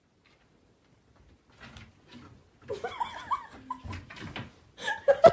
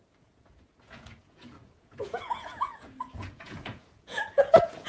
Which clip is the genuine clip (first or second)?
first